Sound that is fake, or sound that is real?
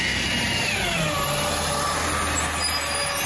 real